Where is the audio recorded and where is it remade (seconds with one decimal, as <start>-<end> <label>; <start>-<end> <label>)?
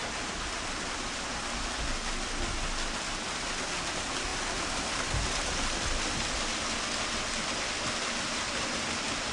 0.0-1.3 remade; 1.3-9.3 recorded